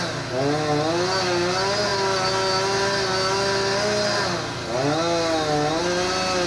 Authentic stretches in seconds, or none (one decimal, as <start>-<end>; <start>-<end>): 0.0-6.5